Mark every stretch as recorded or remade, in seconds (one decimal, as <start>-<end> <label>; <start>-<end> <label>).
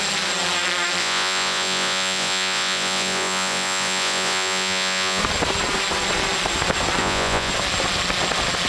0.0-1.0 recorded; 1.0-5.2 remade; 5.2-7.0 recorded; 7.0-7.5 remade; 7.5-8.7 recorded